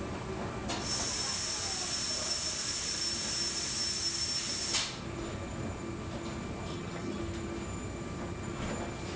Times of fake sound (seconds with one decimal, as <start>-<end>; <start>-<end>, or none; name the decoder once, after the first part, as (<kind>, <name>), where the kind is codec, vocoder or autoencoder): 6.7-7.2 (vocoder, HiFi-GAN)